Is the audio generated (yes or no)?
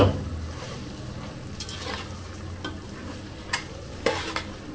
no